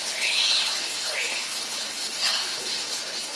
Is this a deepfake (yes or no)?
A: yes